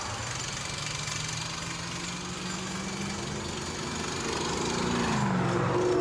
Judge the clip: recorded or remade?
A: recorded